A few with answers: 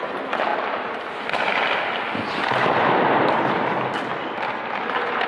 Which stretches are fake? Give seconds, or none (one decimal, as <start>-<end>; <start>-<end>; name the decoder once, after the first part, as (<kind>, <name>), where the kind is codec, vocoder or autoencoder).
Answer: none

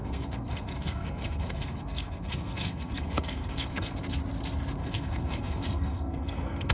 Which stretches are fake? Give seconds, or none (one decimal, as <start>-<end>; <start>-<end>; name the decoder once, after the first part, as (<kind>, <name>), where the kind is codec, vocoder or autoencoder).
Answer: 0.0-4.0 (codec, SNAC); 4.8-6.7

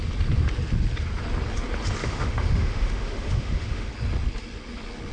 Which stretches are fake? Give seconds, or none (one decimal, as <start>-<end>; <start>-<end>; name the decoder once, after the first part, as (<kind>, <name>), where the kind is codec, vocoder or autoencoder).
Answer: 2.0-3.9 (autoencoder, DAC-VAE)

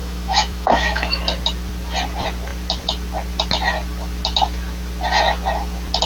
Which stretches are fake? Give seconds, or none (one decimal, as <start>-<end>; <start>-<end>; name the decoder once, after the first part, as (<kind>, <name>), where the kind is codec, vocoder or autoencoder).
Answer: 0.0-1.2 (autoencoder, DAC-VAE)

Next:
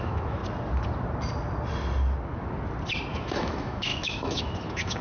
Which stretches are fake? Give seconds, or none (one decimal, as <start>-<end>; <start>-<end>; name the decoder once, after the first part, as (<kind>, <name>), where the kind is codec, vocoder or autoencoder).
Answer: 0.0-0.4 (autoencoder, DAC-VAE); 3.1-5.0

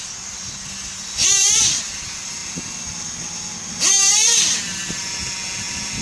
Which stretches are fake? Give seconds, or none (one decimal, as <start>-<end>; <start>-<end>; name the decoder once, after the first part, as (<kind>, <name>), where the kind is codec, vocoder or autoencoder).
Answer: none

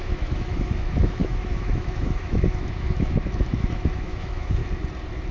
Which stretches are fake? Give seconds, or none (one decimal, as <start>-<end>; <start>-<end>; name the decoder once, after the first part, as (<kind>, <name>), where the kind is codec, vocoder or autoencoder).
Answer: 0.0-4.6 (autoencoder, DAC-VAE)